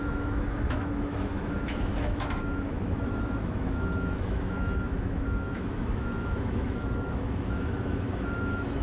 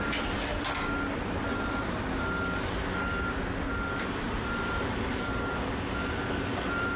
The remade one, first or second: first